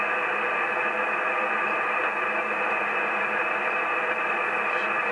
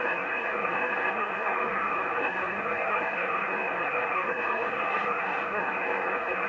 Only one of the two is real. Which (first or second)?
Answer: first